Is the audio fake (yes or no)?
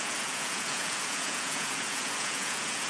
yes